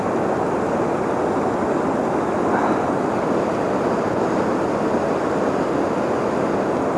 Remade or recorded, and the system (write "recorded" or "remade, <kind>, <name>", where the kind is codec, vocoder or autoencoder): recorded